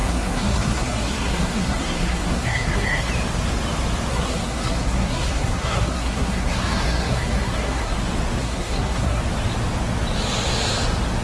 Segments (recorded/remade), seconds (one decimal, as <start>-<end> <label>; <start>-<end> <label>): 0.0-3.1 remade; 3.1-4.1 recorded; 4.1-8.0 remade; 8.0-8.4 recorded; 8.4-9.2 remade; 9.2-11.2 recorded